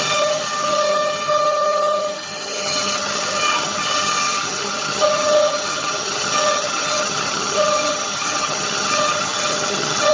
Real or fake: fake